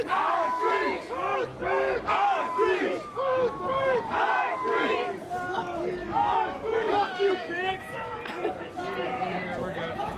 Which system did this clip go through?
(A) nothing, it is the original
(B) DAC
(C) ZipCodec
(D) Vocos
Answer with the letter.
B